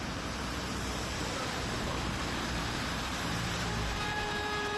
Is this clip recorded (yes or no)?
no